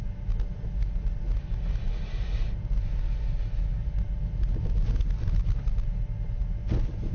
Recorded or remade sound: recorded